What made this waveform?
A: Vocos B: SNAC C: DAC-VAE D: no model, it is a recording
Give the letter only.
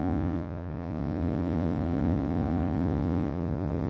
A